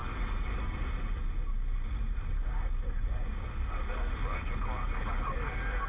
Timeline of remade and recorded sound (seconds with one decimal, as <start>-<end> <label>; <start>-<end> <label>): 0.0-5.9 recorded